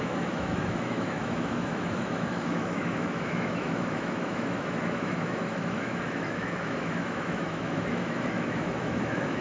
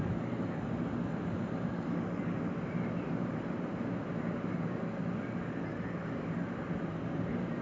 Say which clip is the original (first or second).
second